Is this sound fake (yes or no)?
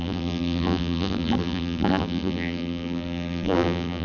yes